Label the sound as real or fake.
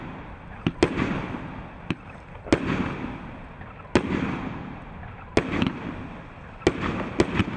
real